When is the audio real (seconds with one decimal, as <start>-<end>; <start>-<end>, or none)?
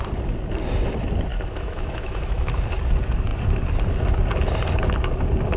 0.0-1.3; 2.5-5.6